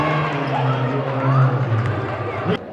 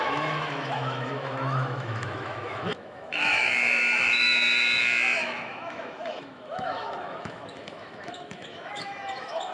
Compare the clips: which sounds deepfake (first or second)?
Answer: second